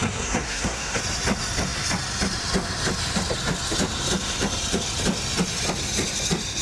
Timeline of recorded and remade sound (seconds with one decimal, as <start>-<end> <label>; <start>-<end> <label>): 0.0-1.0 remade; 1.0-6.6 recorded